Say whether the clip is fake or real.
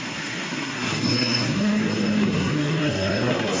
fake